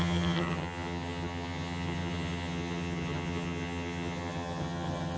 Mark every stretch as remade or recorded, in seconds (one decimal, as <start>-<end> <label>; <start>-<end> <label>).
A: 0.0-5.2 remade